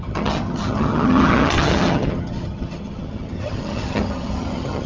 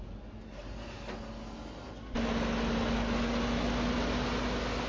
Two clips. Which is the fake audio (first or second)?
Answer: first